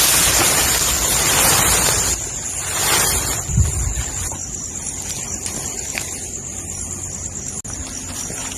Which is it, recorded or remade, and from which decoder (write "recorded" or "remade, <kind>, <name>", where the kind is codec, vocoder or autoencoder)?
recorded